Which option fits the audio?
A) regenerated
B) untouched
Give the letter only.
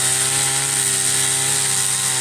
B